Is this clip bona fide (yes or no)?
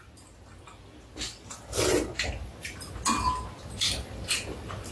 yes